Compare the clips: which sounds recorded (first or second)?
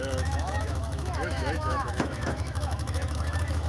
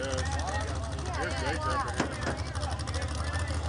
second